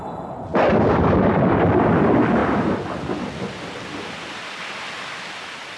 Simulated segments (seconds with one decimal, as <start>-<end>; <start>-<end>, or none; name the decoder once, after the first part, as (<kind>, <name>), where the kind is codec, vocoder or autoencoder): none